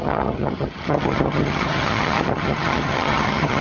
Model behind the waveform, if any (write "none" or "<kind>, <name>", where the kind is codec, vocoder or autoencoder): vocoder, HiFi-GAN